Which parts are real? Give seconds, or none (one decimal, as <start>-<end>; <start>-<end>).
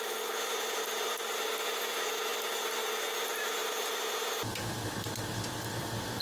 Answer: 0.0-6.2